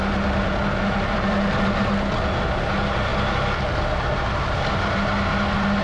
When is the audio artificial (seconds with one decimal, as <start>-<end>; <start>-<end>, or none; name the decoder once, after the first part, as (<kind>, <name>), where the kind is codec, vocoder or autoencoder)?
none